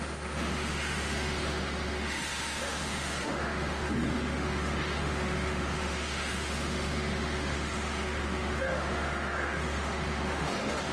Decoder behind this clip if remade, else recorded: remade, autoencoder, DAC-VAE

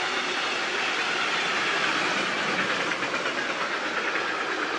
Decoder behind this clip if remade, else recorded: recorded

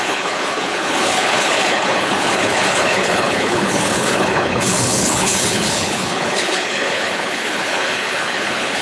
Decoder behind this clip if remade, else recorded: remade, codec, HILCodec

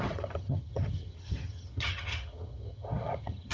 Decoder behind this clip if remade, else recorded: remade, vocoder, HiFi-GAN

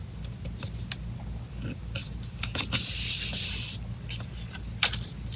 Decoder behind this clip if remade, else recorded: recorded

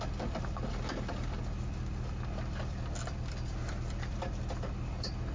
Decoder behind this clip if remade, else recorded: recorded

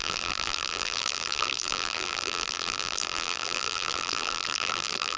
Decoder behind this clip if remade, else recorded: remade, vocoder, BigVGAN v2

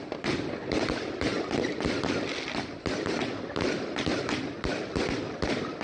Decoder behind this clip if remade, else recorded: recorded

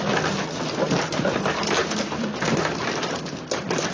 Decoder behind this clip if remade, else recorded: remade, vocoder, BigVGAN v2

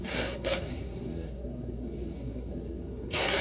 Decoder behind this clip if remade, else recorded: remade, codec, SNAC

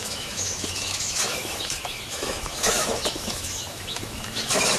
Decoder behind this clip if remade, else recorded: remade, autoencoder, DAC-VAE